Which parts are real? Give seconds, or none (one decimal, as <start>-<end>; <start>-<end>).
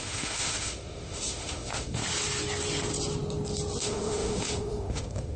2.0-3.8